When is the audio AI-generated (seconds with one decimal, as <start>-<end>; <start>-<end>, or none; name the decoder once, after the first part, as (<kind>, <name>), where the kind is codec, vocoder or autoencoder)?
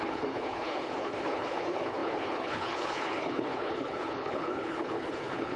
0.0-5.6 (codec, HILCodec)